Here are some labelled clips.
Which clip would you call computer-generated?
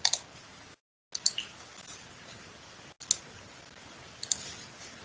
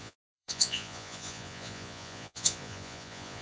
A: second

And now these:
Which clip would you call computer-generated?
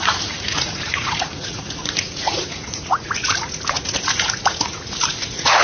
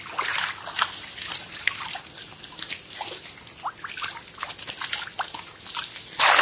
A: first